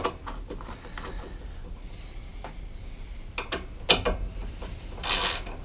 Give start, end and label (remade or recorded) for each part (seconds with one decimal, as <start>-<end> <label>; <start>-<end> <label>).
0.0-5.6 recorded